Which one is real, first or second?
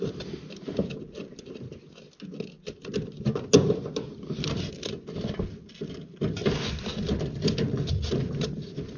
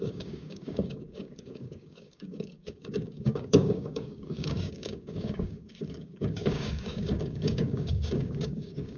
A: first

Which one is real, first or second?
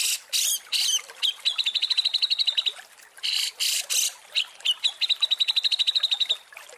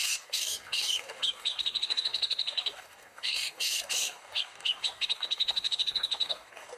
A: first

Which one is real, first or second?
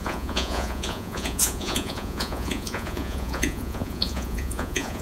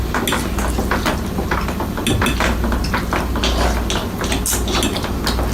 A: second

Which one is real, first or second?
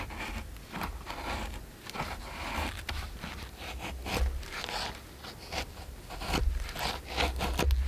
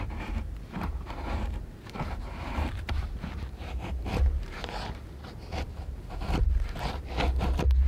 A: first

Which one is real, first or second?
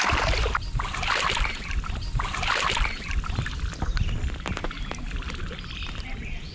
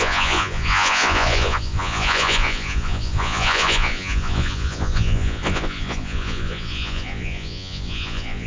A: first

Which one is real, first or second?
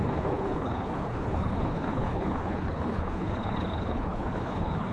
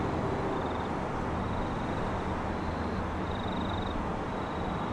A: second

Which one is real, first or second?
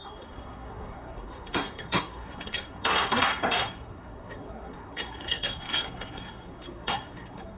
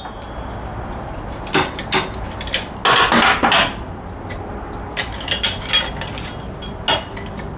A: second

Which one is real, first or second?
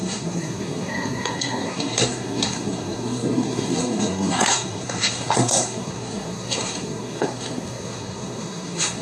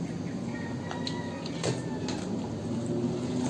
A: second